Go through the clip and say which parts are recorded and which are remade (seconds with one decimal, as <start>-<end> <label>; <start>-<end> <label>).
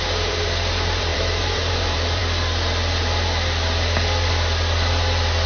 0.0-2.2 remade; 2.2-5.5 recorded